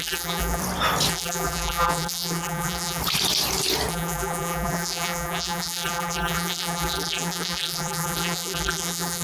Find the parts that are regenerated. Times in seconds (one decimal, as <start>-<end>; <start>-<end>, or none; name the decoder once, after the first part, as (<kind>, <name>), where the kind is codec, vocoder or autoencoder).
0.0-0.6 (vocoder, BigVGAN v2); 1.1-3.0; 3.9-9.2